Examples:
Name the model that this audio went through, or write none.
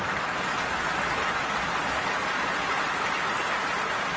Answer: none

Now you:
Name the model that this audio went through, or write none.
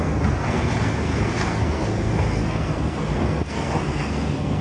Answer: codec, SNAC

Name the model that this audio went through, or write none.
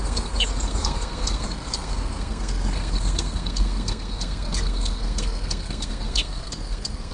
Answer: codec, SNAC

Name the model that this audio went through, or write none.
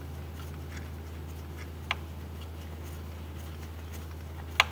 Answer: none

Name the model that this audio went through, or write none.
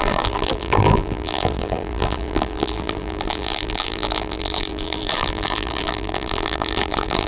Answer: vocoder, BigVGAN v2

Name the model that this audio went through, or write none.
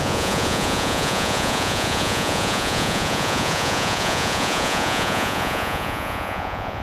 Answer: vocoder, Vocos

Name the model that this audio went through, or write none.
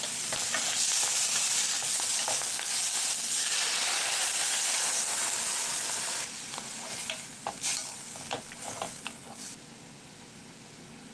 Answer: none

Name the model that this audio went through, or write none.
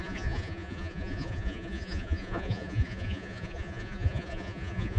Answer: vocoder, Vocos